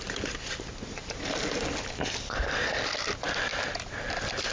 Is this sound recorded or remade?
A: recorded